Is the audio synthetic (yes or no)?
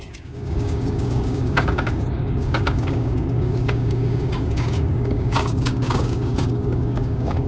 yes